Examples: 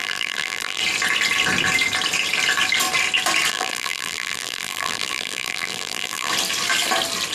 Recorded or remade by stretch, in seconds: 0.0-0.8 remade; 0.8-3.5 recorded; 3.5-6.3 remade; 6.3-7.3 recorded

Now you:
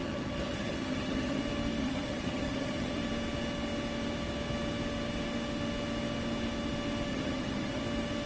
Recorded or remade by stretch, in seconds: 0.0-1.4 remade; 1.4-1.8 recorded; 1.8-2.9 remade; 2.9-7.1 recorded; 7.1-7.8 remade; 7.8-8.3 recorded

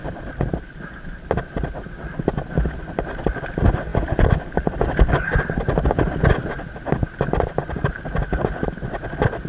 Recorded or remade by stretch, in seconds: 0.0-9.5 recorded

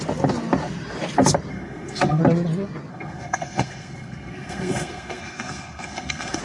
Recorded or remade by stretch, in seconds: 0.0-1.5 recorded; 1.5-2.2 remade; 2.2-2.9 recorded; 2.9-6.4 remade

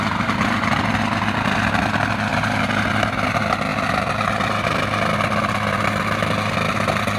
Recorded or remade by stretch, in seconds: 0.0-2.3 recorded; 2.3-2.9 remade; 2.9-7.2 recorded

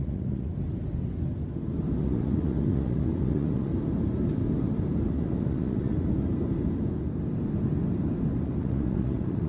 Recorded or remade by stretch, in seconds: 0.0-0.5 remade; 0.5-2.0 recorded; 2.0-3.7 remade; 3.7-5.1 recorded; 5.1-6.1 remade; 6.1-8.6 recorded; 8.6-9.5 remade

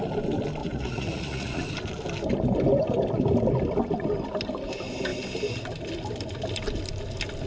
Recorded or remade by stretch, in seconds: 0.0-0.6 recorded; 0.6-1.6 remade; 1.6-7.5 recorded

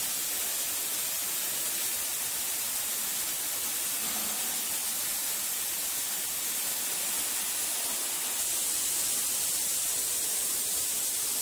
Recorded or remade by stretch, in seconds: 0.0-10.4 recorded; 10.4-11.0 remade; 11.0-11.4 recorded